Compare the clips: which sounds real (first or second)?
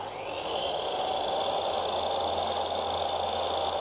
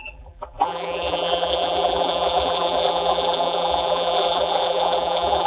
first